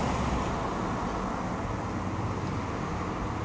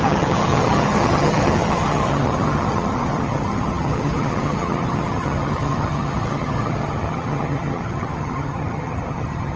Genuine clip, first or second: first